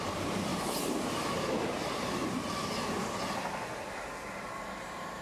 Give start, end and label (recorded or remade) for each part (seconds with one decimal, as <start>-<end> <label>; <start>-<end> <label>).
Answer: 0.0-0.5 remade; 0.5-1.7 recorded; 1.7-2.6 remade; 2.6-4.8 recorded; 4.8-5.2 remade

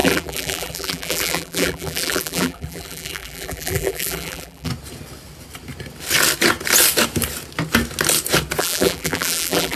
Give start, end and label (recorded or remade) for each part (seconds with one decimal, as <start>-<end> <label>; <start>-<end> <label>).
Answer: 0.0-4.7 remade; 4.7-8.6 recorded; 8.6-9.8 remade

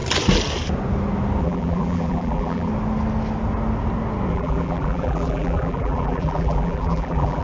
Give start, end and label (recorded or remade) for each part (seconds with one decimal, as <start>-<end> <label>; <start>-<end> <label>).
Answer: 0.0-1.4 recorded; 1.4-2.7 remade; 2.7-4.3 recorded; 4.3-7.4 remade

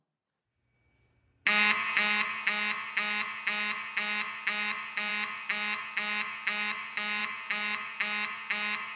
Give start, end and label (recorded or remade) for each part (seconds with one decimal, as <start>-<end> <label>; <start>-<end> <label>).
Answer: 0.0-9.0 recorded

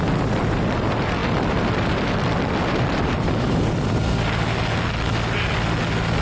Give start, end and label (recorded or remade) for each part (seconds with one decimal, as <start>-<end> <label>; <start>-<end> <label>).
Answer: 0.0-1.2 recorded; 1.2-4.1 remade; 4.1-6.2 recorded

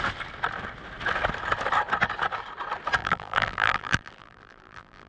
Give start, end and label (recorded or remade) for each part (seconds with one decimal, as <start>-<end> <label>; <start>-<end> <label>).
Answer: 0.0-3.0 recorded; 3.0-5.1 remade

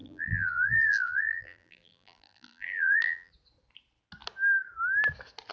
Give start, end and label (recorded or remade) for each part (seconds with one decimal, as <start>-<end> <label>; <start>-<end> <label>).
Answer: 0.0-3.3 remade; 3.3-5.5 recorded